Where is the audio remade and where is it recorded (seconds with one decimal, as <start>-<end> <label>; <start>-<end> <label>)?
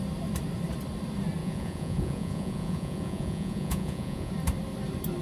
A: 0.0-1.4 recorded; 1.4-4.3 remade; 4.3-5.2 recorded